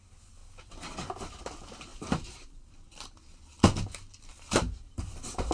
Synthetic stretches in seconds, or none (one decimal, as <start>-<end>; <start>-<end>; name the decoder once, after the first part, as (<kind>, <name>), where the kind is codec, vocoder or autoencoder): 1.9-2.7 (vocoder, BigVGAN v2); 4.3-5.0